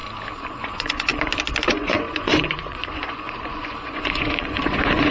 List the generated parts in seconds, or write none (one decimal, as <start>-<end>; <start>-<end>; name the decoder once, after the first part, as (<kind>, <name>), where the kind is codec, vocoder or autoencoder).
0.5-1.1 (vocoder, Vocos); 1.7-5.1